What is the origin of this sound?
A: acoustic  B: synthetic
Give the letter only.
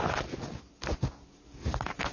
A